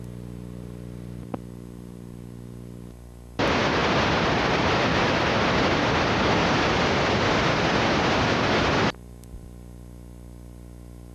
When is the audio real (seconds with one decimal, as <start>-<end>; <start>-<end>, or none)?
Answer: 0.0-11.1